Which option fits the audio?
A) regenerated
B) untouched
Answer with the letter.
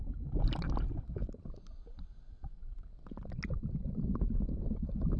B